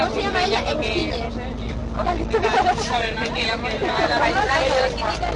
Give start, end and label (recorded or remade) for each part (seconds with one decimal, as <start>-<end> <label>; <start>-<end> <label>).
0.0-2.5 recorded; 2.5-5.4 remade